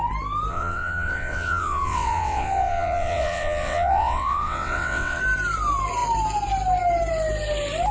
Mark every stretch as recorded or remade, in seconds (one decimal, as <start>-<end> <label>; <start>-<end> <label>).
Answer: 0.0-0.5 recorded; 0.5-5.2 remade; 5.2-7.9 recorded